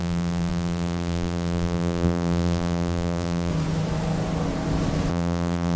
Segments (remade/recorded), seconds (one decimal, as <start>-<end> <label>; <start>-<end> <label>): 0.0-3.5 remade; 3.5-5.1 recorded; 5.1-5.8 remade